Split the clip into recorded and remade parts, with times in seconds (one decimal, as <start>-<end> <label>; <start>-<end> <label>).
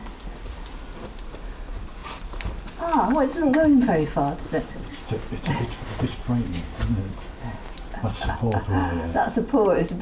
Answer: 0.0-10.0 recorded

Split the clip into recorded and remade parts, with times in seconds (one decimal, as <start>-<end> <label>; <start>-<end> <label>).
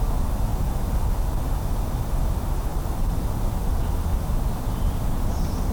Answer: 0.0-5.7 recorded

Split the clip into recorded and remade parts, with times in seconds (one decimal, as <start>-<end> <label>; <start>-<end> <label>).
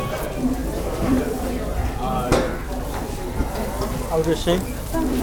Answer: 0.0-0.6 recorded; 0.6-3.7 remade; 3.7-4.2 recorded; 4.2-5.2 remade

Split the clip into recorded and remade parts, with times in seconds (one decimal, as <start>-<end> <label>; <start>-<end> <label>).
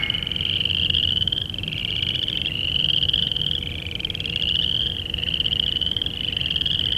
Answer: 0.0-1.8 recorded; 1.8-4.3 remade; 4.3-7.0 recorded